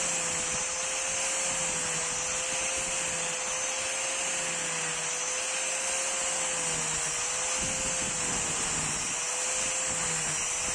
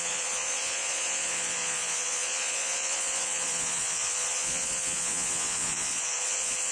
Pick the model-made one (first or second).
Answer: second